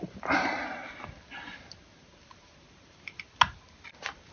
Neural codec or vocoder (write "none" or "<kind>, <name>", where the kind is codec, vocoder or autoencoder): none